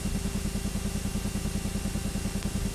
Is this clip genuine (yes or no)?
yes